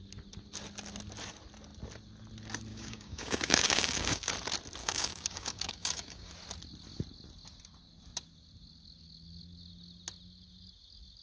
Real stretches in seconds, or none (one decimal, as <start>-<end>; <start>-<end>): 0.0-2.7; 4.3-4.8; 6.3-11.2